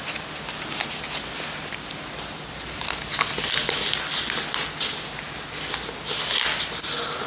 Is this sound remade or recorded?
recorded